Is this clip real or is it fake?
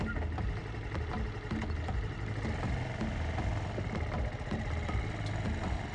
real